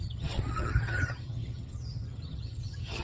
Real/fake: fake